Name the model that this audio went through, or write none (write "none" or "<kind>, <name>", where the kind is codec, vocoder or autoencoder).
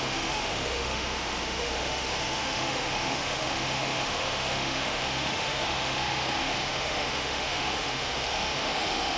autoencoder, DAC-VAE